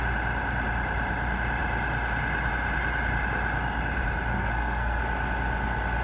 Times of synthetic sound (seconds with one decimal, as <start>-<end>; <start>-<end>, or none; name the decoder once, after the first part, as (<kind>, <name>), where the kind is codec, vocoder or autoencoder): 4.3-5.0 (codec, SNAC)